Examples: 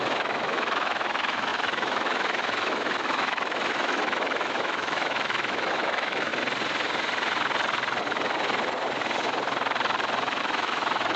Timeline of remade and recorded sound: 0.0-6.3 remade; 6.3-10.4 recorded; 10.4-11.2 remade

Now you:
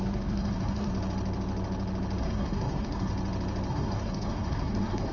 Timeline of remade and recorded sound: 0.0-0.9 remade; 0.9-2.2 recorded; 2.2-3.1 remade; 3.1-3.7 recorded; 3.7-5.1 remade

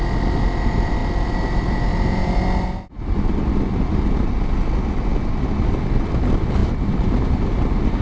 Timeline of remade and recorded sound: 0.0-1.0 recorded; 1.0-3.0 remade; 3.0-6.6 recorded; 6.6-7.4 remade; 7.4-8.0 recorded

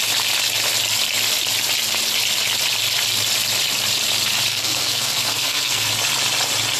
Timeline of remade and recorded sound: 0.0-4.5 recorded; 4.5-5.9 remade; 5.9-6.8 recorded

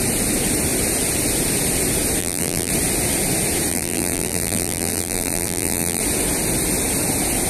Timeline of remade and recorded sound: 0.0-2.2 recorded; 2.2-2.7 remade; 2.7-3.7 recorded; 3.7-6.0 remade; 6.0-7.5 recorded

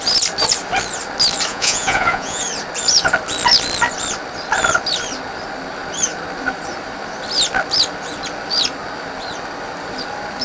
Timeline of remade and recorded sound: 0.0-1.5 recorded; 1.5-2.4 remade; 2.4-10.4 recorded

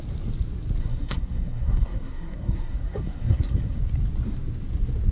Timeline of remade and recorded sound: 0.0-0.8 recorded; 0.8-3.8 remade; 3.8-5.1 recorded

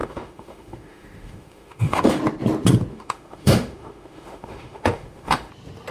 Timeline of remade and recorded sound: 0.0-2.2 remade; 2.2-2.9 recorded; 2.9-5.5 remade; 5.5-5.9 recorded